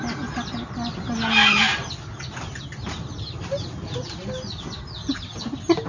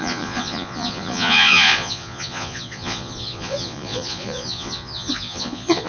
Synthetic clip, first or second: second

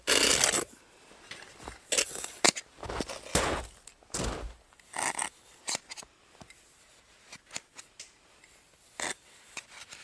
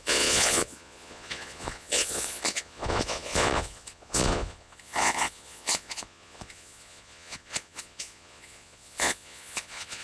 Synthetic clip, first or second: second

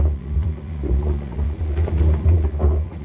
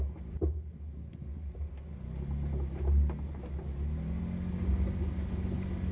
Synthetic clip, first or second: first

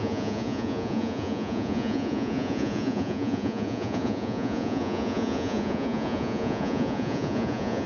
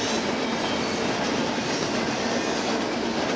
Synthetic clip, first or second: first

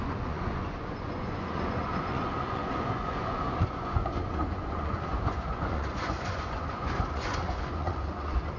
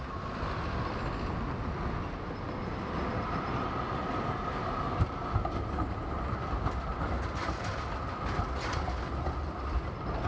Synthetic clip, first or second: first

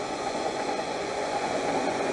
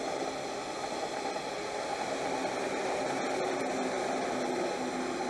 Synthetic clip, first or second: first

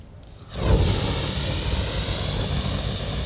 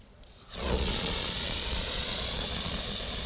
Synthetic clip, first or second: second